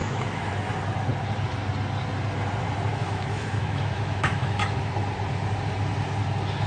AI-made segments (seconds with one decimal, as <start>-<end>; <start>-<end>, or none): 0.0-0.5; 2.9-4.9